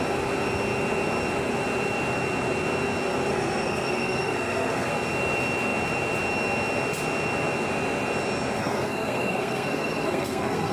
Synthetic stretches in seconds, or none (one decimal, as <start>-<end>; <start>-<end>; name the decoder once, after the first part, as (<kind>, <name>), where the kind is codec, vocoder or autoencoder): 3.3-4.9 (codec, SNAC); 8.6-10.7

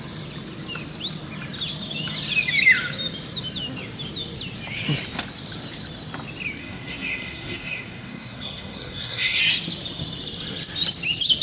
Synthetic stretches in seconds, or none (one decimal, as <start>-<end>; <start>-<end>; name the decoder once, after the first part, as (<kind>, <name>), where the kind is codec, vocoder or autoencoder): 6.6-9.4 (codec, SNAC)

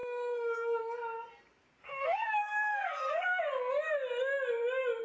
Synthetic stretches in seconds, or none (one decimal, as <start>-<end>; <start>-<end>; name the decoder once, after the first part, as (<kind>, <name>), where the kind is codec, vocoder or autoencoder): 0.0-0.8 (codec, SNAC); 1.8-3.4

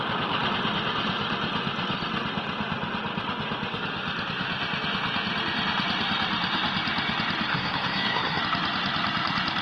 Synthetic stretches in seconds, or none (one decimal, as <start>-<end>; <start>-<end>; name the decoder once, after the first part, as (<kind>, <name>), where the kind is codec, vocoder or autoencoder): 7.5-8.4 (codec, SNAC)

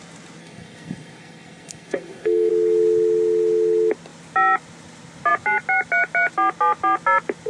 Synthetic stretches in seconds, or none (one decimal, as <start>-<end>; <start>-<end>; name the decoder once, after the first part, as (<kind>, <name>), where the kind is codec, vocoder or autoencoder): 0.4-2.5 (codec, SNAC)

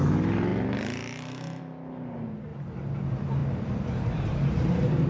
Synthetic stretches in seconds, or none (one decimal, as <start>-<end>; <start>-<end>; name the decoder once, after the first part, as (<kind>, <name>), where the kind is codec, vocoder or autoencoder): none

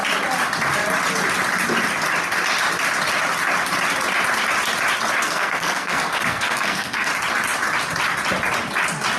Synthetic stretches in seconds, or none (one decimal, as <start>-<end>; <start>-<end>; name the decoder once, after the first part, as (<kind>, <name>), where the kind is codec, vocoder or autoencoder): 5.2-7.1 (codec, SNAC)